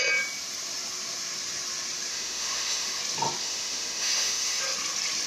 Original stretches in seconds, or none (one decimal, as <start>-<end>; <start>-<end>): 0.0-2.1; 3.0-3.4; 4.6-5.3